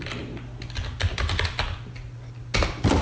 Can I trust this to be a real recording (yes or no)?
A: yes